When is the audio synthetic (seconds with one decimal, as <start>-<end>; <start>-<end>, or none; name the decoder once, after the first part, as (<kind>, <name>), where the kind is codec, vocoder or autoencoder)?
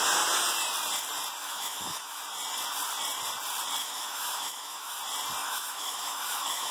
1.4-2.2 (autoencoder, DAC-VAE); 3.8-5.0; 5.4-6.7